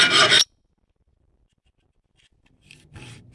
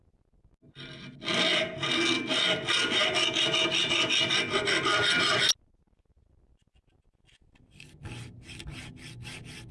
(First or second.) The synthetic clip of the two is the first